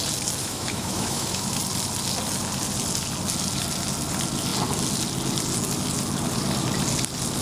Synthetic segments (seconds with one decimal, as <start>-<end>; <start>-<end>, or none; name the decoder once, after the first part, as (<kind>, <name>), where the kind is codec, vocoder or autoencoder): 0.4-1.6 (autoencoder, DAC-VAE)